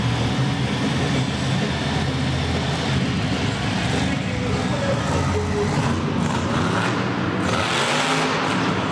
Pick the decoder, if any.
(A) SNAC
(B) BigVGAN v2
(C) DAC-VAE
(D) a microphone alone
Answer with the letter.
D